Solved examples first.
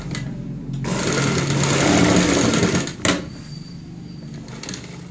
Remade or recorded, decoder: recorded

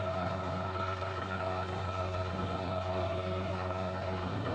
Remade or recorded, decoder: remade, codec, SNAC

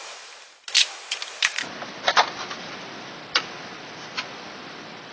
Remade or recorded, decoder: recorded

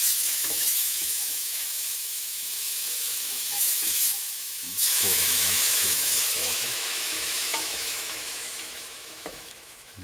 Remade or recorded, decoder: remade, autoencoder, DAC-VAE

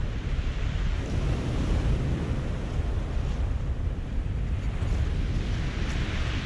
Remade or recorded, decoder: remade, vocoder, BigVGAN v2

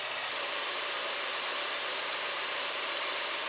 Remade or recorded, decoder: remade, vocoder, BigVGAN v2